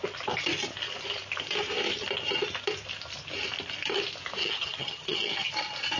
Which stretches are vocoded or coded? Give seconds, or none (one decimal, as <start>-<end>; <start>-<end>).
4.4-5.5